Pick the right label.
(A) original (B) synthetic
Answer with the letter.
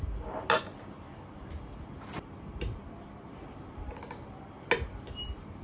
A